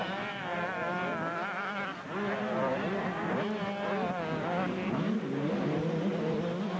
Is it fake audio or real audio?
real